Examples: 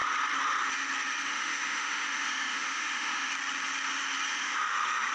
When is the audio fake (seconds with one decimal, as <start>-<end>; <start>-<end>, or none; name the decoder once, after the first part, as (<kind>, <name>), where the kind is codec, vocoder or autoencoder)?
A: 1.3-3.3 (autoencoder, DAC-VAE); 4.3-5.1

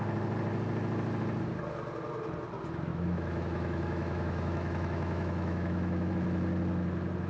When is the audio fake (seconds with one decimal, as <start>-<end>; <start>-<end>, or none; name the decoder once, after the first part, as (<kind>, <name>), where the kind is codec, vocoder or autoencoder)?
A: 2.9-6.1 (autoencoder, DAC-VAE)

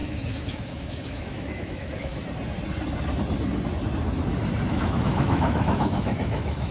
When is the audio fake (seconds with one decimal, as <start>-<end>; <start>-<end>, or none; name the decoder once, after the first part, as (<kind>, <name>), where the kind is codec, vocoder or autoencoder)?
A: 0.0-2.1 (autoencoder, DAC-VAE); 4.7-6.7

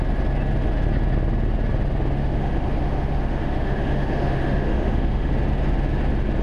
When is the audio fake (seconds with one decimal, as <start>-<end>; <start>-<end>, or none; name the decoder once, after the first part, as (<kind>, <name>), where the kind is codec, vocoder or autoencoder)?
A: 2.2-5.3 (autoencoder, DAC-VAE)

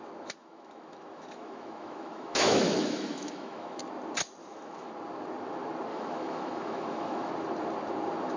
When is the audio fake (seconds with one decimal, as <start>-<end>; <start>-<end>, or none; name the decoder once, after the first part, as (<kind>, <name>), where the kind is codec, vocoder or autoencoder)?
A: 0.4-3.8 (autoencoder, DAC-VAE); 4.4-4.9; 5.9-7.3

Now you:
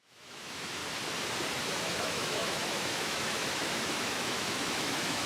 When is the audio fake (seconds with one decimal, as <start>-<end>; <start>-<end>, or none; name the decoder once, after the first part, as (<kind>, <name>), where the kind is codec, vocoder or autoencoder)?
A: 0.0-0.8 (autoencoder, DAC-VAE); 1.7-5.3

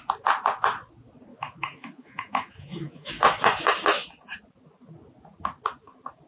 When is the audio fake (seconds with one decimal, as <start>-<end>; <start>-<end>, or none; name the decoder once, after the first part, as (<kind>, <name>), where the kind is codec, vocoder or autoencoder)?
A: 1.3-3.1 (autoencoder, DAC-VAE)

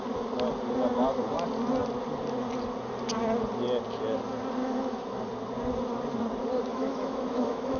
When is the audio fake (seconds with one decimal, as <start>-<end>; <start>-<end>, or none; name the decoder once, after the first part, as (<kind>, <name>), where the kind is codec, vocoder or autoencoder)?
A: 4.6-5.3 (autoencoder, DAC-VAE); 6.7-7.8